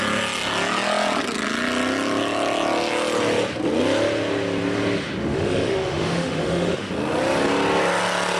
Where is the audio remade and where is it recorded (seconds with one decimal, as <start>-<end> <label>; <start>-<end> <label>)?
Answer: 0.0-5.2 recorded; 5.2-6.9 remade; 6.9-8.4 recorded